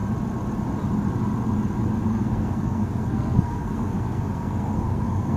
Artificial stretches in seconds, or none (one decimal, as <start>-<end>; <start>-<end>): 2.1-5.4